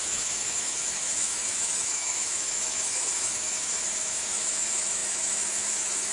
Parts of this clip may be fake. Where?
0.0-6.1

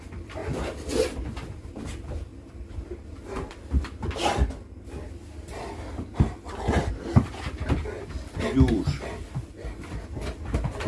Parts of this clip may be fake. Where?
0.0-0.4; 1.0-2.3; 6.9-7.8; 8.7-10.9

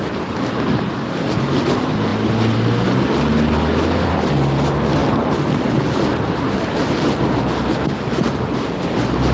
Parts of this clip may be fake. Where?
none

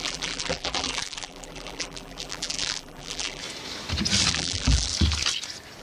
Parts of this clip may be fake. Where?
0.0-3.4; 4.3-4.9